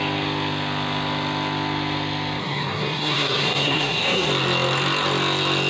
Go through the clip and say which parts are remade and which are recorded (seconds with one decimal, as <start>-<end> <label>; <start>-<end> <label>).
0.0-2.4 recorded; 2.4-4.3 remade; 4.3-5.7 recorded